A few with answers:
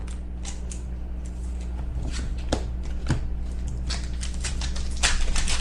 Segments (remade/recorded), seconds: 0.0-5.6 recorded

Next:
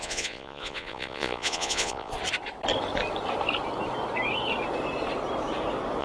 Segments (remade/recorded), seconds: 0.0-2.1 remade; 2.1-6.0 recorded

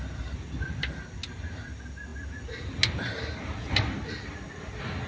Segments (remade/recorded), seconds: 0.0-5.1 recorded

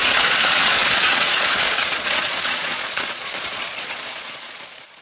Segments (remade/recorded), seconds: 0.0-5.0 remade

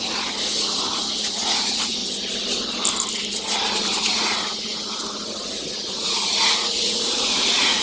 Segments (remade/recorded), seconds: 0.0-2.0 remade; 2.0-4.0 recorded; 4.0-7.8 remade

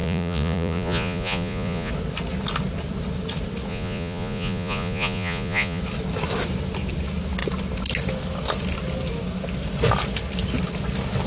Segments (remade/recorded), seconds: 0.0-1.9 remade; 1.9-3.7 recorded; 3.7-5.8 remade; 5.8-11.3 recorded

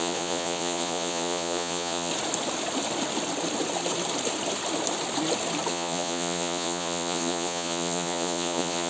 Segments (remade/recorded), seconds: 0.0-2.1 remade; 2.1-5.7 recorded; 5.7-8.9 remade